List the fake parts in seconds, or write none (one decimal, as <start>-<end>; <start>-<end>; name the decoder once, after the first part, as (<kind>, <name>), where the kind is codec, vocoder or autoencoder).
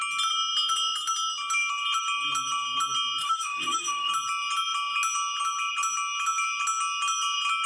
3.2-4.1 (autoencoder, DAC-VAE)